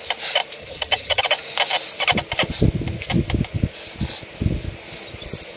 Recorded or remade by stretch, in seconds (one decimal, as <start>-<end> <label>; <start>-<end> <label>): 0.0-0.6 recorded; 0.6-1.2 remade; 1.2-5.6 recorded